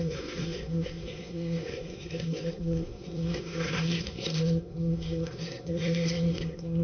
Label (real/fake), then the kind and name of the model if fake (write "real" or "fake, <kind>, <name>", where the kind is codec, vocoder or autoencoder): fake, codec, SNAC